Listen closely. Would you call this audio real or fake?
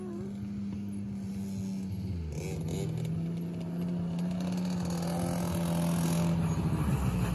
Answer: real